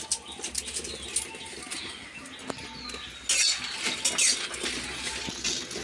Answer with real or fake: real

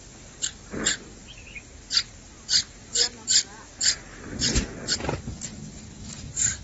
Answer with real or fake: real